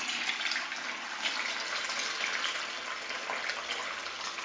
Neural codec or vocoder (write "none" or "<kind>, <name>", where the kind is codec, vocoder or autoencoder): none